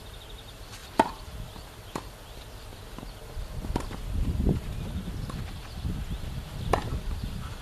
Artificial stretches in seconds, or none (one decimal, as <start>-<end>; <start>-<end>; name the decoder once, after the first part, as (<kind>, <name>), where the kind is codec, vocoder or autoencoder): 0.8-5.4 (vocoder, BigVGAN v2); 6.7-7.6